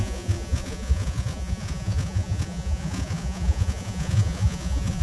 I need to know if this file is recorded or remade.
remade